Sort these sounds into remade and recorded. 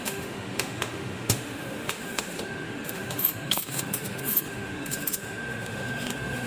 remade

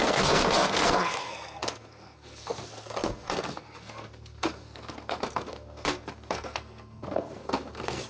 remade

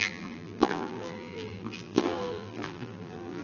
remade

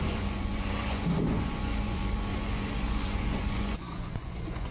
remade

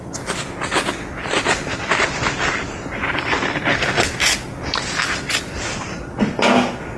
recorded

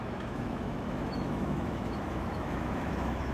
remade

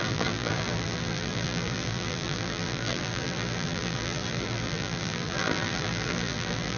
remade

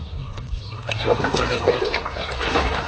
remade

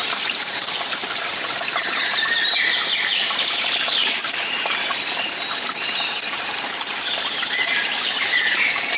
remade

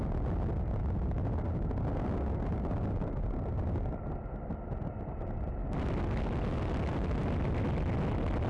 recorded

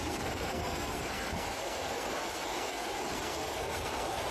remade